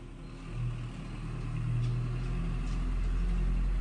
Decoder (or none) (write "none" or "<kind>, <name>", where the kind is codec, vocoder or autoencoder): none